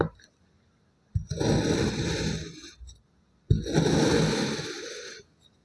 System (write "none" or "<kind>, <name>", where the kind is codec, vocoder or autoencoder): none